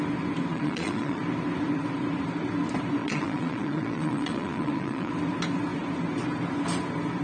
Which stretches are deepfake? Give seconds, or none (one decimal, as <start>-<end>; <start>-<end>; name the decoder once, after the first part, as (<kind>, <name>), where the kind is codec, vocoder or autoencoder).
0.5-1.2 (vocoder, Vocos); 3.0-5.1